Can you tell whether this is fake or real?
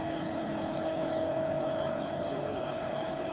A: fake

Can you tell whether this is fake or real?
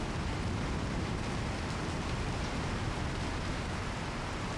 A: real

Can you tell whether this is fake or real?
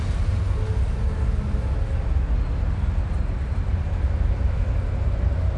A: real